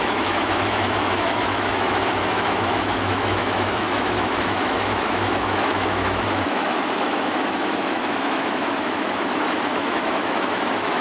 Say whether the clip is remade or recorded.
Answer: remade